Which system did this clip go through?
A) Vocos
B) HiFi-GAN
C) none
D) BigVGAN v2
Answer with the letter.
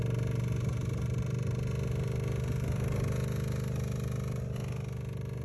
C